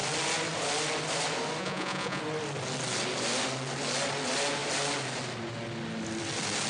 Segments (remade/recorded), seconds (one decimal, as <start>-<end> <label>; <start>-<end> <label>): 0.0-1.6 recorded; 1.6-2.2 remade; 2.2-6.7 recorded